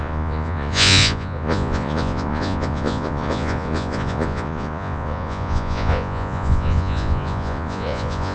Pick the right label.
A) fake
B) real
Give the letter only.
A